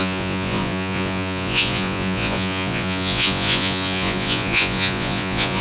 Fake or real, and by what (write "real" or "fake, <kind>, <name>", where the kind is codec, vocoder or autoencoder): fake, vocoder, Vocos